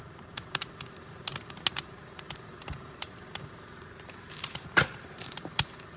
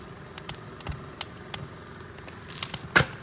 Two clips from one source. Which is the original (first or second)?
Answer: second